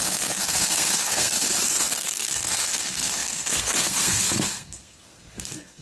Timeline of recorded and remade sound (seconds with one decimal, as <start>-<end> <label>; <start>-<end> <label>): 0.0-5.8 remade